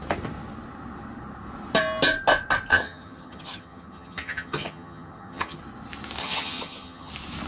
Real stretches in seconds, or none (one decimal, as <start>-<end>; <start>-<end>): 0.0-2.7; 5.6-6.2; 7.1-7.5